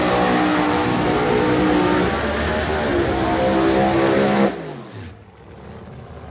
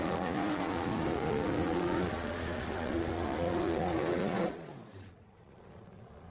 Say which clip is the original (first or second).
first